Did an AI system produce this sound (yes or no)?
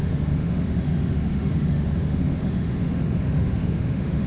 yes